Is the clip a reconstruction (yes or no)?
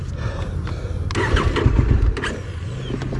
no